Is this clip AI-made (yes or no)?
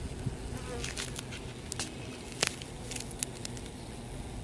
no